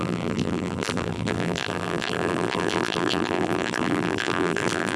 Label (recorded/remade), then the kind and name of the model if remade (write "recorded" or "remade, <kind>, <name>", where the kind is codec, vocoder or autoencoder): remade, vocoder, BigVGAN v2